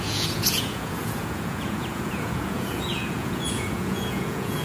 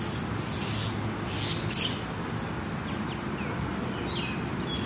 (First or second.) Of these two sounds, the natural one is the second